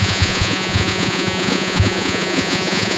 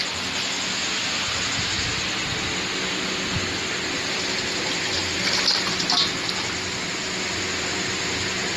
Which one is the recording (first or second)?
second